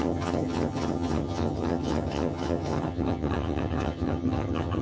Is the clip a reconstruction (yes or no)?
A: yes